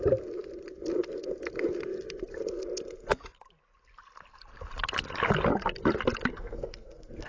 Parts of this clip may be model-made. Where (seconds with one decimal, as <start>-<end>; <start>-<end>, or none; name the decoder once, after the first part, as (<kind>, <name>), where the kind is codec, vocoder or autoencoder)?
6.3-7.3 (codec, SNAC)